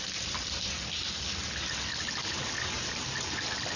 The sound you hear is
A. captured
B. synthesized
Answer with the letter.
A